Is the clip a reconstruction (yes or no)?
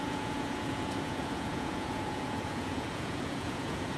yes